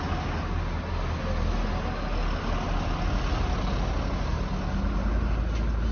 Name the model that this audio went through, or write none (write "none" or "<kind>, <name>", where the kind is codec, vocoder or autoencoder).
none